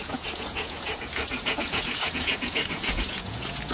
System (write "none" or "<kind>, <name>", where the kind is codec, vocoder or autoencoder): vocoder, Vocos